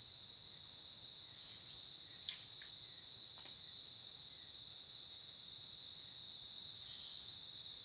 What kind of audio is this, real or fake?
real